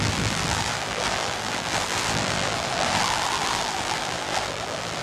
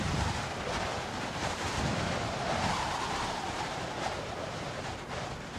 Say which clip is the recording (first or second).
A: second